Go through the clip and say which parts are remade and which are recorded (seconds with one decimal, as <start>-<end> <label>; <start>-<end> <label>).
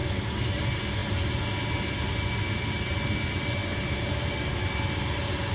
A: 0.0-0.6 remade; 0.6-5.5 recorded